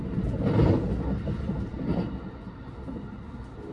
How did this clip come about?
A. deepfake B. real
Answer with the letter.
B